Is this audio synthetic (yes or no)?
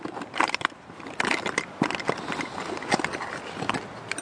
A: no